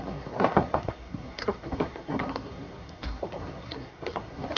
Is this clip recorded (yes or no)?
no